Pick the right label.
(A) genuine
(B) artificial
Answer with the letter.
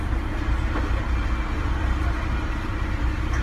A